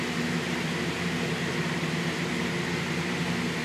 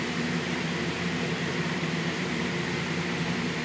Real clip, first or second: first